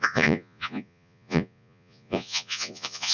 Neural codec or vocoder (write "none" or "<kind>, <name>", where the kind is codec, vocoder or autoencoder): vocoder, Vocos